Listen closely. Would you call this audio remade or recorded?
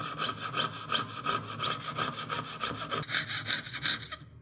recorded